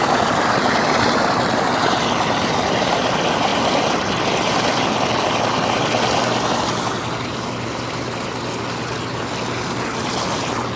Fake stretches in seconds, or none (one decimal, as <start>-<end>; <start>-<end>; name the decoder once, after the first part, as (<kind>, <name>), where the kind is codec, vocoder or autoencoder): none